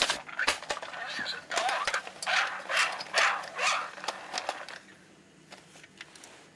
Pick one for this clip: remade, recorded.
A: recorded